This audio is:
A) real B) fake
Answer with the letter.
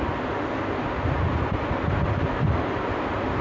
A